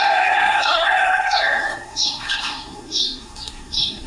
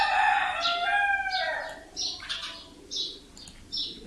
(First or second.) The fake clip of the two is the first